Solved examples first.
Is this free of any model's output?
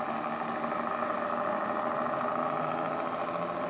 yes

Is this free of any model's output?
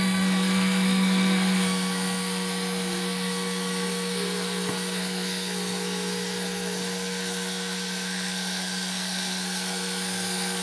no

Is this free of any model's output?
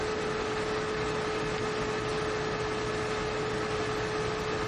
yes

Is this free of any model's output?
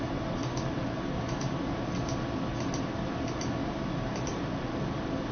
yes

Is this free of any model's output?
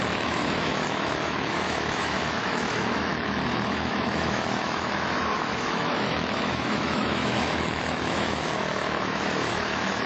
no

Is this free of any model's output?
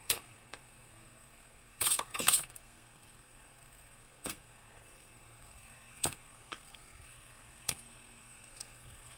no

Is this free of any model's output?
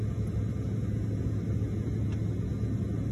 yes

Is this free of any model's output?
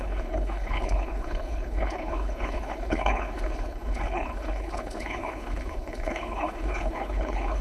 no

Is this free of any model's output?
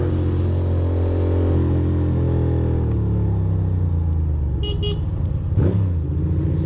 yes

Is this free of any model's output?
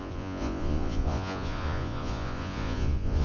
no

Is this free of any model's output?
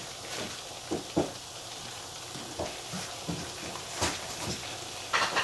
yes